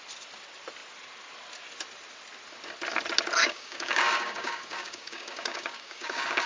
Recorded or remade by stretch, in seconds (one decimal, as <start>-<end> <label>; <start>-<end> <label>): 0.0-3.4 recorded; 3.4-6.5 remade